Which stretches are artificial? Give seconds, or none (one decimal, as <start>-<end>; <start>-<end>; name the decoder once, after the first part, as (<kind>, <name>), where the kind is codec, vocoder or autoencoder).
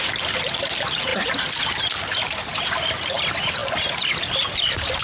none